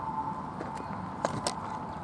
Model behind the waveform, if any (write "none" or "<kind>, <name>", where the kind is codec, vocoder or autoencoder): none